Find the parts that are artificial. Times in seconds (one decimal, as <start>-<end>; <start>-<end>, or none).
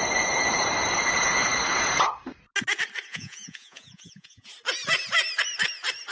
3.1-4.5